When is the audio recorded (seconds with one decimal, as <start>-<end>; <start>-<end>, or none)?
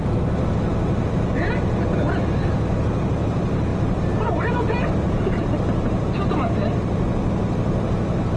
0.0-3.7; 5.5-8.4